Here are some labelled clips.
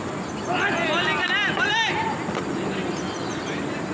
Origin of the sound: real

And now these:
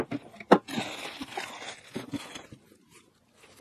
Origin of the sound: real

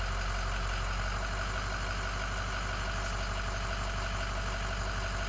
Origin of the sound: real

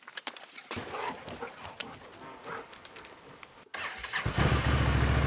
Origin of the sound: real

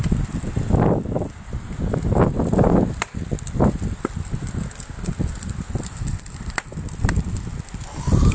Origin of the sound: real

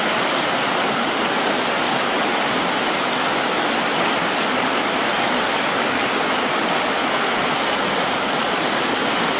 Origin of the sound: real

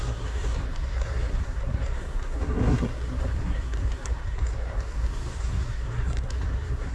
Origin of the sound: fake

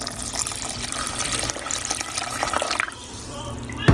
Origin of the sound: fake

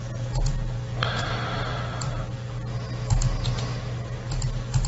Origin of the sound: real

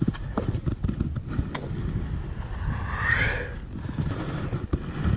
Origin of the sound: real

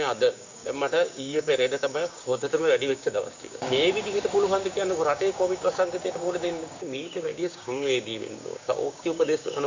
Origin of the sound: fake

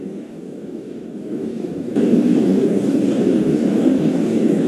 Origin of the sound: fake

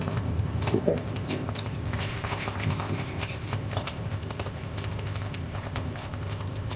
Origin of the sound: fake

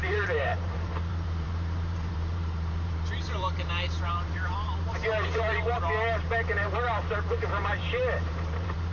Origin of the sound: fake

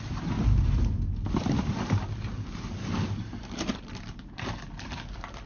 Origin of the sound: real